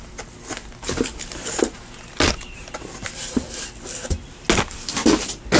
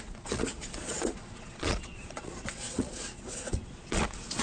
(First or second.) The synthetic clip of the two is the second